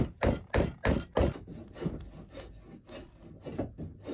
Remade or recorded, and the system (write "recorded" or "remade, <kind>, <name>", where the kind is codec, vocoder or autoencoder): recorded